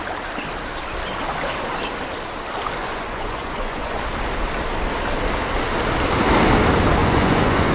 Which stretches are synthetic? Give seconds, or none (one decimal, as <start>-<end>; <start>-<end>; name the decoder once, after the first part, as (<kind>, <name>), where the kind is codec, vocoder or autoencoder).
2.8-4.0 (vocoder, Vocos); 7.0-7.7